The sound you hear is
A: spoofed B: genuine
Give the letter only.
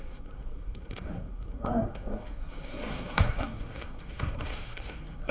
A